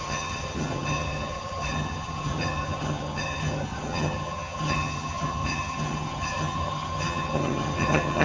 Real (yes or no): no